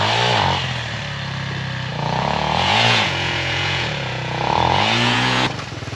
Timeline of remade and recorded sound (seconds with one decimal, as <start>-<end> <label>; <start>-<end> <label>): 0.0-1.9 recorded; 1.9-5.5 remade; 5.5-6.0 recorded